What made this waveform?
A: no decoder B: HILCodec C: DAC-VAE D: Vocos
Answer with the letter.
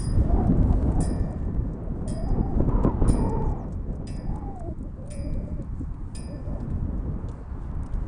A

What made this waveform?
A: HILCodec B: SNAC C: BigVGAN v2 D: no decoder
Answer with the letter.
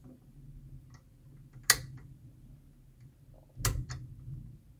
D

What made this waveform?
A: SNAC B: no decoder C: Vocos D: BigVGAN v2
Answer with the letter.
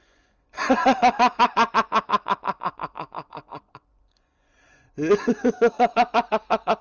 C